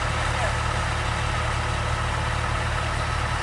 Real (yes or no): yes